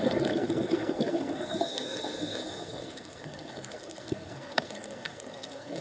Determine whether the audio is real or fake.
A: fake